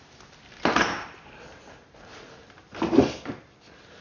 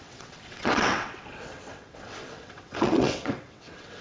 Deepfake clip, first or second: second